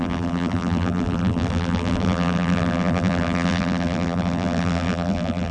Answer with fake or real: fake